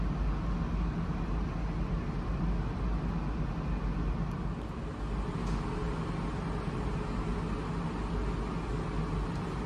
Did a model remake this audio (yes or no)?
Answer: no